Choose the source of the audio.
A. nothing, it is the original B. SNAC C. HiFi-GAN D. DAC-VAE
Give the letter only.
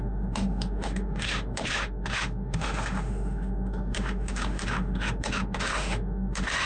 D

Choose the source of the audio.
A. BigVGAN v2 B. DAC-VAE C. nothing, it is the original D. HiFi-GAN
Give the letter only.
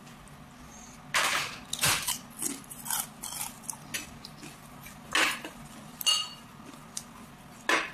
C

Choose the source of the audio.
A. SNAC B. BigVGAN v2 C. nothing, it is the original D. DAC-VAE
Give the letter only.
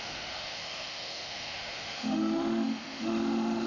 D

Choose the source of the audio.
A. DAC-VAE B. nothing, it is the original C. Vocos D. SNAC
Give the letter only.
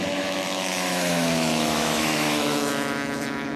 A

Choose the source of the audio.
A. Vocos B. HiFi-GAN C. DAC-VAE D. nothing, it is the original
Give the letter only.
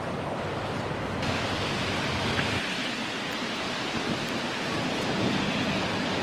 D